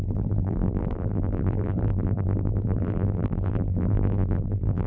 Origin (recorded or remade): remade